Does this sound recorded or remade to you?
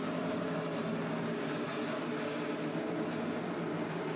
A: recorded